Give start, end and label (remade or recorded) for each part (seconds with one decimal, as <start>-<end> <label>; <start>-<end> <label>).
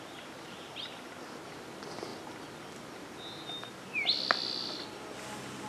0.0-5.7 recorded